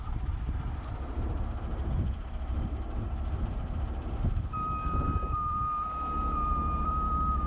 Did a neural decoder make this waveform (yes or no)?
yes